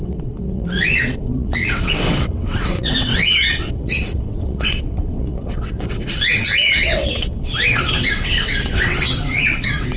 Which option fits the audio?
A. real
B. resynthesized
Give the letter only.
B